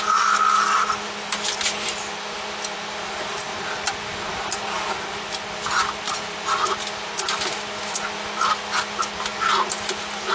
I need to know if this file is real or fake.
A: real